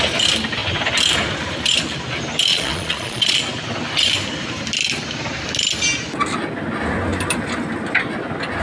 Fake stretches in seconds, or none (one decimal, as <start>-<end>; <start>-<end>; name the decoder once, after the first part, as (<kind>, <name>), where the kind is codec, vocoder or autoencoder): 2.5-3.4 (vocoder, Vocos)